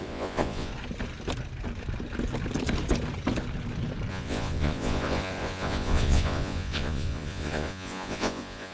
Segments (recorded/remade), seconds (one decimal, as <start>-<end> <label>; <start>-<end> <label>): 0.0-0.7 remade; 0.7-4.1 recorded; 4.1-8.7 remade